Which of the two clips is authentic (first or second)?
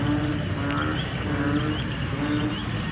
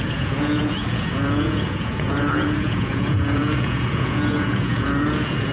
first